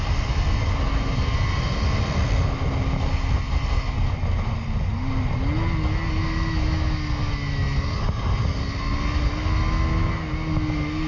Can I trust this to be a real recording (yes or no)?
yes